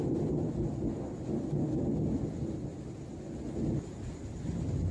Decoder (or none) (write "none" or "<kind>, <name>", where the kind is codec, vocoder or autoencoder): none